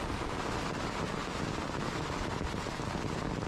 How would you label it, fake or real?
real